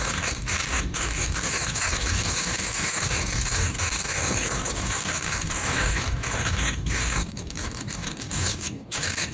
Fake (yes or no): yes